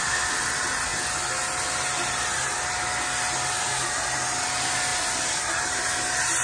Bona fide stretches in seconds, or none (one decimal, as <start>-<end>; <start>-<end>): 0.0-6.4